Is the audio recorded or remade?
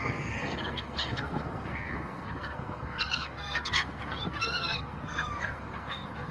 remade